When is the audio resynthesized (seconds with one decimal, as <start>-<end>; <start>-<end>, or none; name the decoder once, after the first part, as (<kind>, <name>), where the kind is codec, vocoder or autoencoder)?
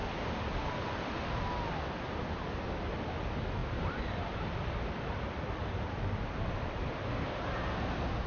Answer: 3.6-6.9 (vocoder, BigVGAN v2)